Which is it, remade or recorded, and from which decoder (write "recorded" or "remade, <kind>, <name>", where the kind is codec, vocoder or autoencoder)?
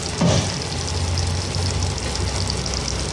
recorded